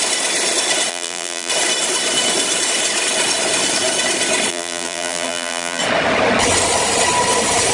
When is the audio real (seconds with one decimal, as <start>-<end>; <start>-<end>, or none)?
0.0-0.9; 1.5-4.5; 5.8-7.7